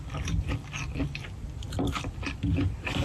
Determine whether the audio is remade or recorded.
recorded